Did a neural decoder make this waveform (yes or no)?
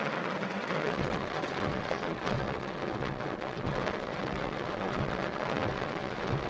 yes